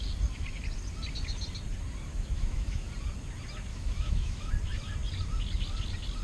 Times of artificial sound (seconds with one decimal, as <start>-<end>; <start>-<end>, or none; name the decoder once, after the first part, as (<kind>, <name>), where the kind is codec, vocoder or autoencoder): 2.1-2.9 (autoencoder, DAC-VAE); 3.7-4.5